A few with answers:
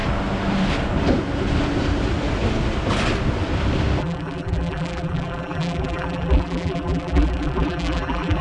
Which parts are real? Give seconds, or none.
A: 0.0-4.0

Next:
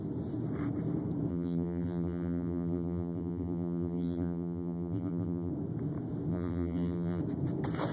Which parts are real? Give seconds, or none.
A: 0.0-1.3; 5.5-6.3; 7.2-7.9

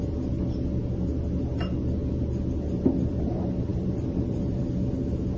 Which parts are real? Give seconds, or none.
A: 0.0-3.7; 4.6-5.4